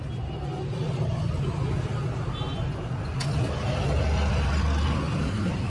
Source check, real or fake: real